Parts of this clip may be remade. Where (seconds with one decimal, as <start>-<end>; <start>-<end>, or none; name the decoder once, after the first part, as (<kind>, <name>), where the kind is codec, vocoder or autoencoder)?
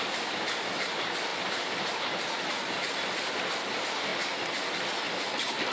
0.0-1.3 (vocoder, BigVGAN v2); 2.5-4.1; 5.0-5.7